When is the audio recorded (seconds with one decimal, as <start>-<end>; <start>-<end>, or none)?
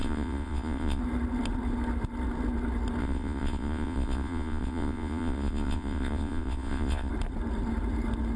1.0-3.0; 7.1-8.4